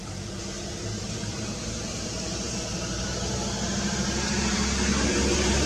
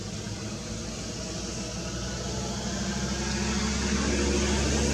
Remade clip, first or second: first